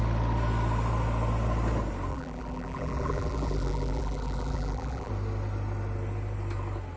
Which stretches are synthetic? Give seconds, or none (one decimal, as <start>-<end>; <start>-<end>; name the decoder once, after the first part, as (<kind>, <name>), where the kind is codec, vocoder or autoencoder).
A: 2.1-5.1 (vocoder, BigVGAN v2)